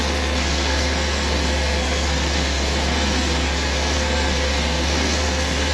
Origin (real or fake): fake